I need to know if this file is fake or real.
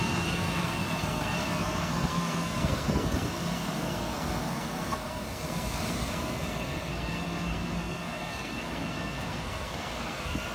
fake